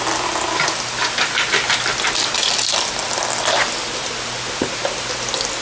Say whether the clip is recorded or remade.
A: recorded